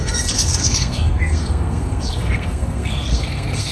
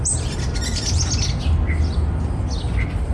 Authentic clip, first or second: second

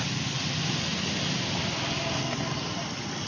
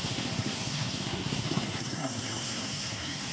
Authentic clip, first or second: first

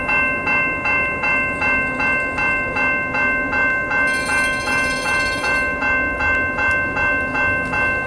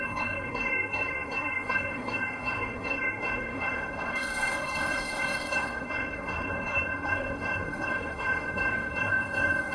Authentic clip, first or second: first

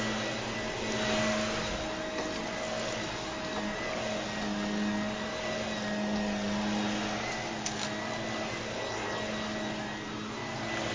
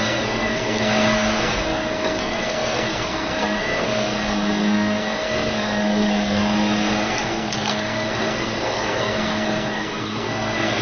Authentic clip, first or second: first